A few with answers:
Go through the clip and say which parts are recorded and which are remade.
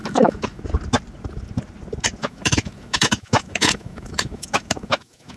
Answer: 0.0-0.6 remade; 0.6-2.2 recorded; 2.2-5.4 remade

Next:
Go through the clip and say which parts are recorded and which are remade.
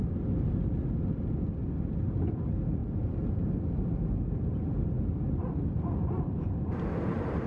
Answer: 0.0-7.5 recorded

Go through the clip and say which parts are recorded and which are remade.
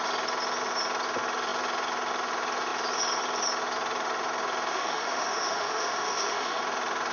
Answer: 0.0-4.7 recorded; 4.7-6.6 remade; 6.6-7.1 recorded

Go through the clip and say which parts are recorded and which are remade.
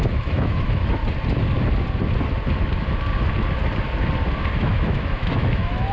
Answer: 0.0-1.0 remade; 1.0-4.5 recorded; 4.5-5.9 remade